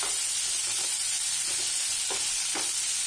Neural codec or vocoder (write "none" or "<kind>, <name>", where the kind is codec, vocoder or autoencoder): none